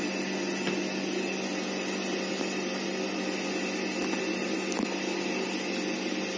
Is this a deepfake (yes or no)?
no